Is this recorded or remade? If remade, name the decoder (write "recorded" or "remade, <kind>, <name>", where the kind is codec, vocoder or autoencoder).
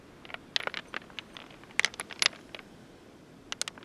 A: recorded